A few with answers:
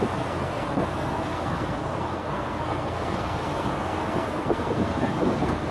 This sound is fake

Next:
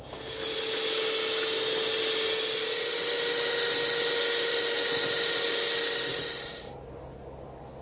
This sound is real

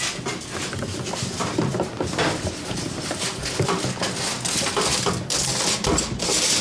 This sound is real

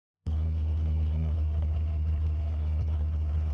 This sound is fake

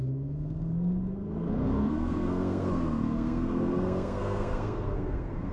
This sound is fake